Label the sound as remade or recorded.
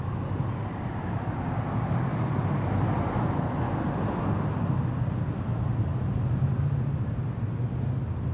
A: recorded